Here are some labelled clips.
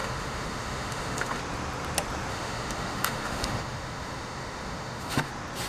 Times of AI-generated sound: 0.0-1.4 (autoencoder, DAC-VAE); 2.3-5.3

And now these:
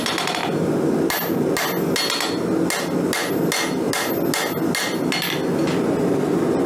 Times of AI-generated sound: none

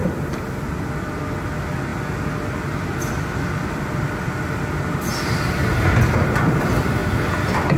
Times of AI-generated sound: none

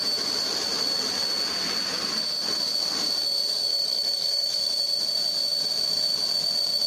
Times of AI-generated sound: 3.7-4.6 (autoencoder, DAC-VAE)